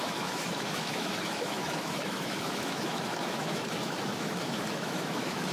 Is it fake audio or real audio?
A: fake